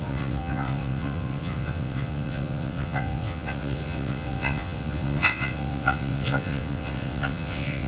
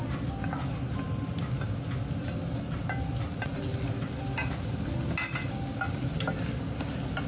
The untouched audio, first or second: second